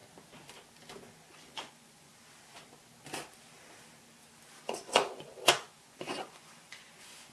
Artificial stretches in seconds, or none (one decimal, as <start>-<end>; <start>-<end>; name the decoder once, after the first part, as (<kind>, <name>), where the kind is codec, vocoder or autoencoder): 1.3-2.1 (vocoder, Vocos); 4.6-7.3